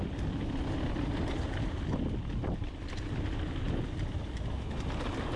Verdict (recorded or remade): remade